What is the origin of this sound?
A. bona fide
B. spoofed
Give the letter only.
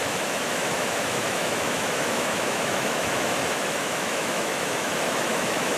B